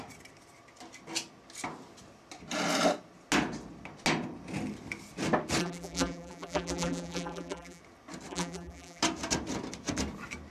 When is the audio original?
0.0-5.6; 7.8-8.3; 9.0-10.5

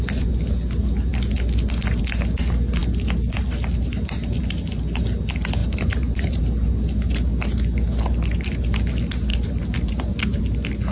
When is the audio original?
0.0-5.6; 6.4-9.3; 10.4-10.9

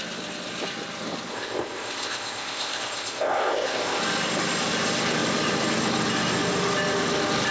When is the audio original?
0.0-1.3; 4.0-7.5

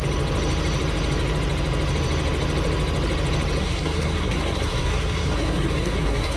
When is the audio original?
0.0-3.6

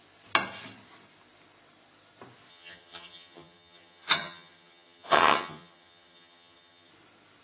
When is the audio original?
0.0-2.5; 6.9-7.4

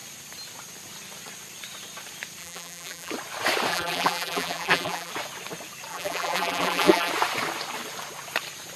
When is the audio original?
0.0-2.4; 3.1-3.7; 5.1-5.9; 7.1-8.8

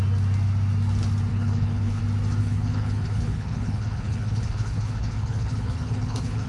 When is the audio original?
0.0-1.3; 2.0-2.4